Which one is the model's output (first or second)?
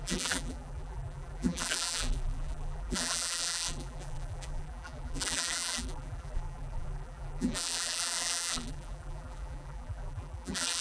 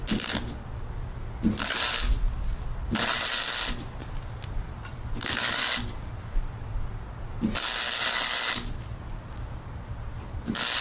first